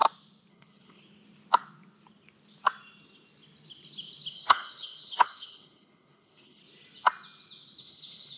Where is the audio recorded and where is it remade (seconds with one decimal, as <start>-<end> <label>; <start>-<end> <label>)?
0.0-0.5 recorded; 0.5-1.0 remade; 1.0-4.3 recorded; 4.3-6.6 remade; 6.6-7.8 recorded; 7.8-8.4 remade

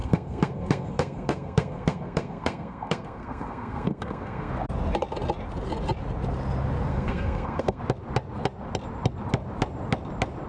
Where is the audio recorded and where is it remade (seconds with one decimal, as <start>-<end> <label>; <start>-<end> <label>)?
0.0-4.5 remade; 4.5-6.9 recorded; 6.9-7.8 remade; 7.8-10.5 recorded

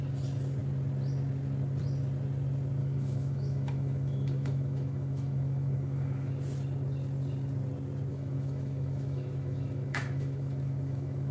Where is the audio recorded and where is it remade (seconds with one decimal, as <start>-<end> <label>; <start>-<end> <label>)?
0.0-2.8 recorded; 2.8-6.3 remade; 6.3-8.1 recorded; 8.1-11.3 remade

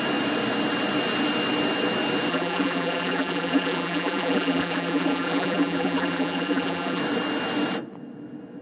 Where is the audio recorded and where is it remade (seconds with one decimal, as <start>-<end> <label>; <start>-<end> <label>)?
0.0-2.3 recorded; 2.3-7.0 remade; 7.0-8.6 recorded

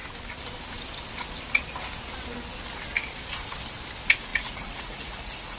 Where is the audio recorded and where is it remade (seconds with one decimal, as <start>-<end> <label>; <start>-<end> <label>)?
0.0-4.3 recorded; 4.3-5.6 remade